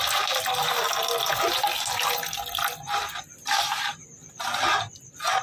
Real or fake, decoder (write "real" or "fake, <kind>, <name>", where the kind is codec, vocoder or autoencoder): real